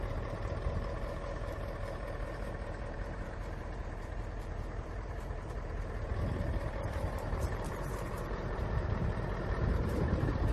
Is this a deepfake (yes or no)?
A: yes